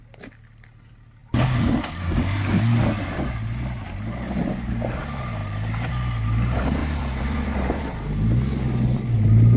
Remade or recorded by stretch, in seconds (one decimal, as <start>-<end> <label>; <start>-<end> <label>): 0.0-5.4 recorded; 5.4-5.9 remade; 5.9-6.8 recorded; 6.8-7.8 remade; 7.8-9.6 recorded